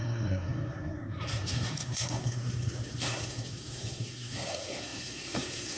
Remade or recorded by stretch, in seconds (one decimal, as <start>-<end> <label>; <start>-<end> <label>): 0.0-5.8 remade